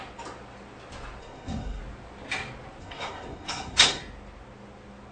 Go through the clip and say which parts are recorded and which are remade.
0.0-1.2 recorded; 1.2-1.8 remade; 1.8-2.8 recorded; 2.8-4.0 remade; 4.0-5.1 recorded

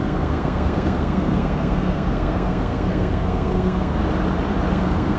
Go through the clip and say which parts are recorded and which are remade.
0.0-4.0 remade; 4.0-4.7 recorded; 4.7-5.2 remade

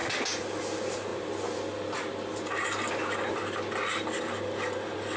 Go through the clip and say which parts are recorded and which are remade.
0.0-5.2 recorded

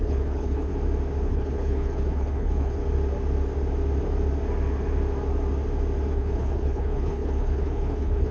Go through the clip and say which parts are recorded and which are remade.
0.0-0.7 remade; 0.7-1.3 recorded; 1.3-2.8 remade; 2.8-6.1 recorded; 6.1-8.3 remade

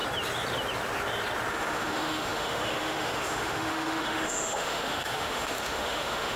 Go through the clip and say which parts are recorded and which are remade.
0.0-1.5 recorded; 1.5-6.4 remade